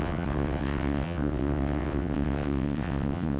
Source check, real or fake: fake